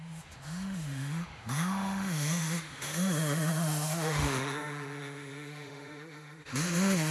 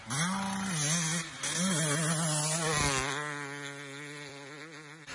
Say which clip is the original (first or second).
second